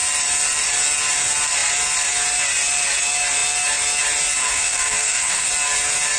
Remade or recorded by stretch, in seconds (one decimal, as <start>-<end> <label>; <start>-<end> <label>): 0.0-4.4 recorded; 4.4-5.5 remade; 5.5-6.2 recorded